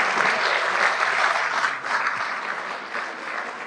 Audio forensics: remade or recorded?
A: recorded